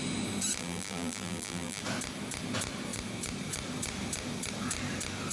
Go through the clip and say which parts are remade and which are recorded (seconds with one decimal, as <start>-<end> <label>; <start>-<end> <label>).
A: 0.0-0.6 recorded; 0.6-1.8 remade; 1.8-5.3 recorded